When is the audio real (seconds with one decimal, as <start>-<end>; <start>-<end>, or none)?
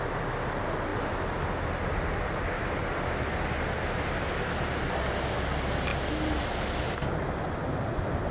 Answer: 0.0-8.3